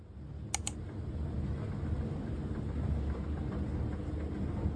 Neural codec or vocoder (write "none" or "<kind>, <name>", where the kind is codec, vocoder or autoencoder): none